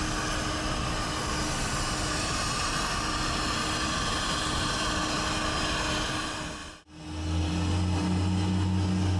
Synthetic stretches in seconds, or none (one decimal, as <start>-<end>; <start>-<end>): none